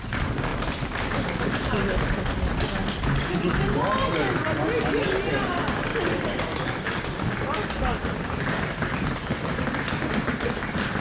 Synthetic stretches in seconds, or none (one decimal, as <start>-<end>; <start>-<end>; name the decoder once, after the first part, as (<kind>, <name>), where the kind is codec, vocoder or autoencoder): none